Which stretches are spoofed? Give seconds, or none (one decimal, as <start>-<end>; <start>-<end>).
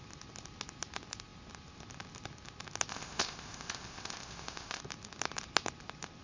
2.9-4.8